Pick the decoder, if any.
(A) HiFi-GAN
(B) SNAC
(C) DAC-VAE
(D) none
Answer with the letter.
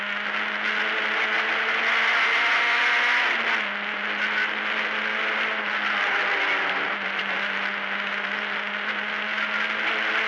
D